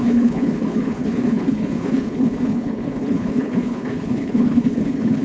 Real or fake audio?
fake